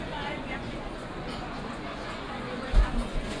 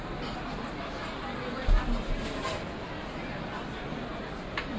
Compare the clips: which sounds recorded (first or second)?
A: second